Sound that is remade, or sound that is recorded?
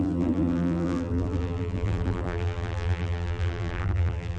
remade